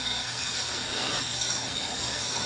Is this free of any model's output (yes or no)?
no